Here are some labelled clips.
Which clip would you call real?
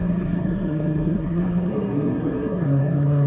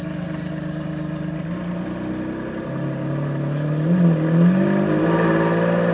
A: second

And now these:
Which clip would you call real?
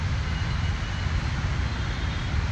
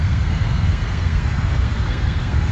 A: first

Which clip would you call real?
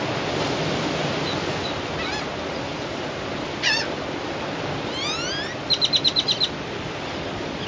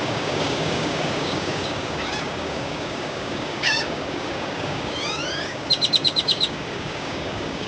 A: first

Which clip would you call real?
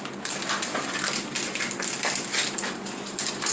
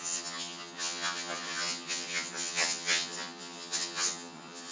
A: first